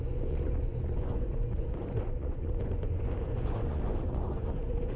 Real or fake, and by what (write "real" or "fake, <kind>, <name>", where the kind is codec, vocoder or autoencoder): fake, vocoder, Vocos